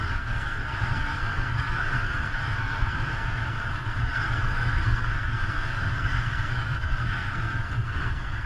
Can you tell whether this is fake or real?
fake